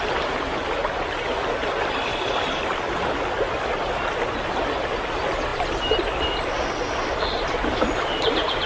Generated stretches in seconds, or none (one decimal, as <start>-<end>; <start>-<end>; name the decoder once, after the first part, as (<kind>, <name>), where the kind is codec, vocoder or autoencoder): none